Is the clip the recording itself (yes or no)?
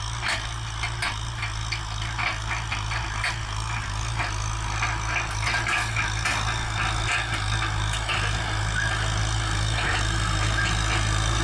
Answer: yes